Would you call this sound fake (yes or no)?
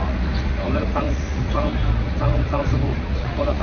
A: yes